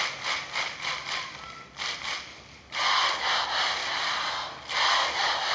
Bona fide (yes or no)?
yes